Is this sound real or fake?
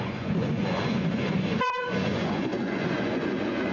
fake